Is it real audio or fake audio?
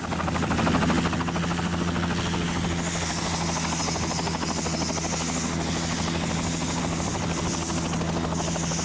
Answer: real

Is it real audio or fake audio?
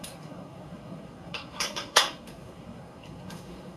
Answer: fake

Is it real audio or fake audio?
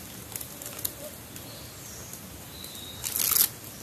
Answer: real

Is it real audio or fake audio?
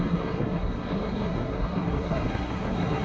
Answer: fake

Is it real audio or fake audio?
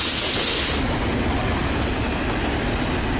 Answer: real